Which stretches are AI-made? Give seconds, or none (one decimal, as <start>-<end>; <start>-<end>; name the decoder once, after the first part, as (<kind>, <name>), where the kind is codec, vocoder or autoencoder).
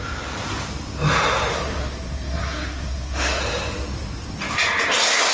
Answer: 1.5-3.4 (codec, SNAC)